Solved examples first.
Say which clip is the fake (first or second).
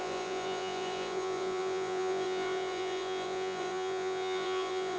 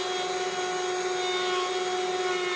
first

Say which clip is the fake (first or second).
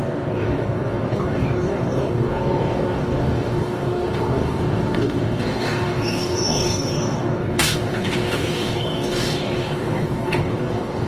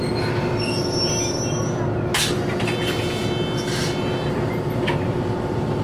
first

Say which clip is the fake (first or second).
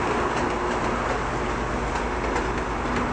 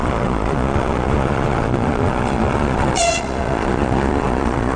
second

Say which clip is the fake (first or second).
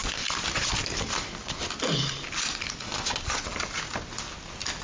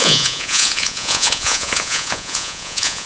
second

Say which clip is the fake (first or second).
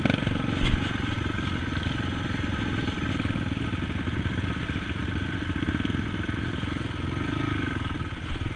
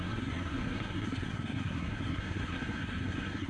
second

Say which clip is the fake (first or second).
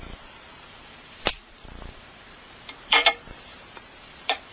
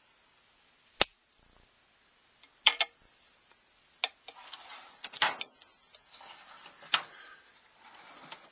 first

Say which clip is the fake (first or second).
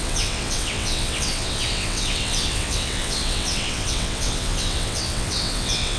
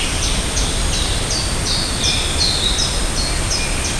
first